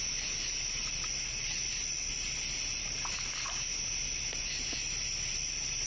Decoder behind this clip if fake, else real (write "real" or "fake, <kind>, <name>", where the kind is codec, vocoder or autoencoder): real